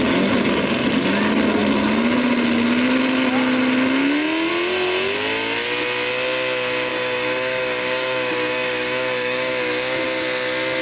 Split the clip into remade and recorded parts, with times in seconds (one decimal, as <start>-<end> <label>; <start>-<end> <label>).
0.0-6.9 recorded; 6.9-9.5 remade; 9.5-10.8 recorded